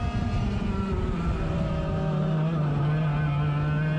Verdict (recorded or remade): recorded